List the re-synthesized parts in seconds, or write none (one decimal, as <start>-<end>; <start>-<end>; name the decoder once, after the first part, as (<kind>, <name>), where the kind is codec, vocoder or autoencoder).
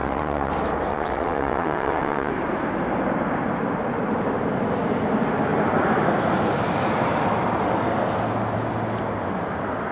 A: 0.0-0.5 (vocoder, WaveNeXt); 0.9-2.3